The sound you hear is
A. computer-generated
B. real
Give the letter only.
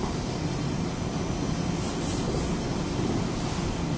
B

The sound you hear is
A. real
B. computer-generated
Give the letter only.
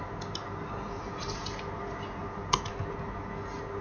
A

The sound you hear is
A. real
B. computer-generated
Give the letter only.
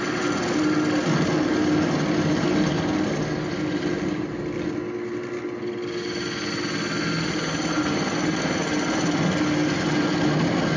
A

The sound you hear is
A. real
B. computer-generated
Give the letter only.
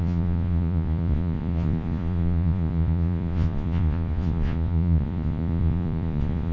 B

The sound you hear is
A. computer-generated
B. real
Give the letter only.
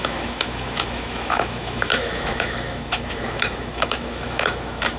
A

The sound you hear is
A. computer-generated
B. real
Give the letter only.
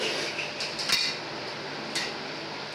B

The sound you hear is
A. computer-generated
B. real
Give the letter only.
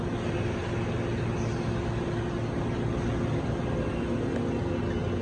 B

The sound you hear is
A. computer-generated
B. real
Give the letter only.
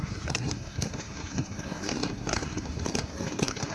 A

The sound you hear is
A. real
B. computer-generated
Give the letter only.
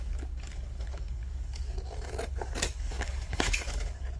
B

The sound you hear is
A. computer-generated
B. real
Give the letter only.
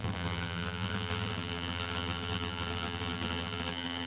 A